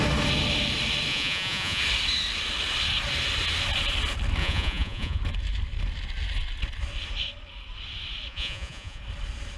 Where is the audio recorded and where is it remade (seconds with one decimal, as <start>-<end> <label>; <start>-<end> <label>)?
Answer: 0.0-1.1 recorded; 1.1-1.8 remade; 1.8-4.4 recorded; 4.4-5.2 remade; 5.2-8.3 recorded; 8.3-9.0 remade; 9.0-9.6 recorded